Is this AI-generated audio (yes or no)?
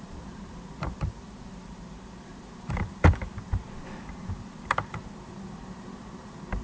yes